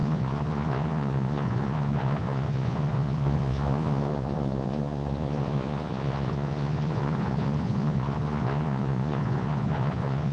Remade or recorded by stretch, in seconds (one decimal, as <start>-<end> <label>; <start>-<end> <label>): 0.0-10.3 remade